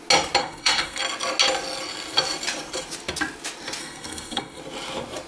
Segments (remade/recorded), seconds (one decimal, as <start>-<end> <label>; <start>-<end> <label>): 0.0-0.4 recorded; 0.4-1.0 remade; 1.0-3.8 recorded; 3.8-4.6 remade; 4.6-5.3 recorded